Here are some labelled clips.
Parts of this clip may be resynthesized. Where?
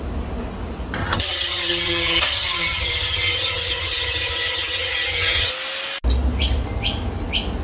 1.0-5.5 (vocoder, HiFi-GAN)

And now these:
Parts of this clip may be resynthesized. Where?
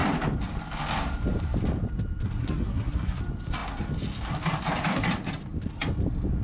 2.4-3.2 (codec, SNAC)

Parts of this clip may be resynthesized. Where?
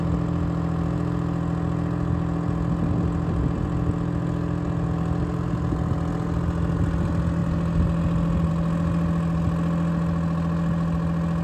none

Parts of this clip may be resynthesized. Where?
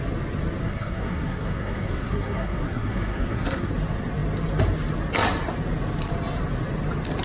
0.6-3.7 (codec, SNAC)